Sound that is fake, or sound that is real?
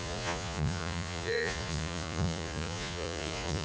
fake